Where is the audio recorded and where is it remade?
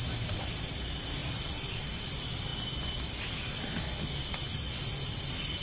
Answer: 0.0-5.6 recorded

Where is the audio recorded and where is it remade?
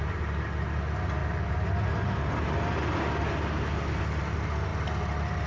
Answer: 0.0-5.5 recorded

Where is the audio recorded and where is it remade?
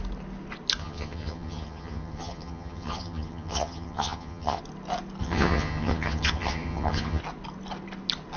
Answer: 0.0-0.8 recorded; 0.8-4.6 remade; 4.6-5.2 recorded; 5.2-7.2 remade; 7.2-8.4 recorded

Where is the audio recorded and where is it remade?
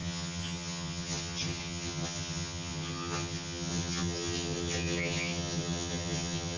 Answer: 0.0-6.6 remade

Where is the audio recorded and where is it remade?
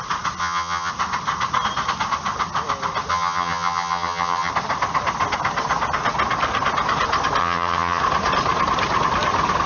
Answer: 0.0-0.4 recorded; 0.4-0.9 remade; 0.9-3.1 recorded; 3.1-4.5 remade; 4.5-7.4 recorded; 7.4-8.0 remade; 8.0-9.7 recorded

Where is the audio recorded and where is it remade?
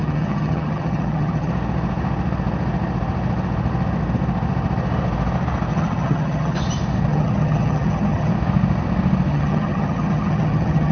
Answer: 0.0-1.5 remade; 1.5-5.7 recorded; 5.7-6.6 remade; 6.6-7.1 recorded; 7.1-8.3 remade; 8.3-9.3 recorded; 9.3-10.9 remade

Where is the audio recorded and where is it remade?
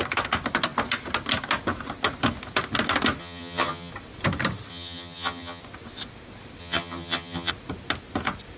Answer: 0.0-3.2 recorded; 3.2-3.9 remade; 3.9-4.7 recorded; 4.7-5.6 remade; 5.6-6.6 recorded; 6.6-7.5 remade; 7.5-8.6 recorded